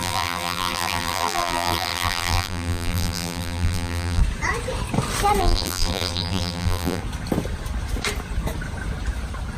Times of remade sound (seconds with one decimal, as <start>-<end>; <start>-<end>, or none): 0.0-4.2; 5.4-7.0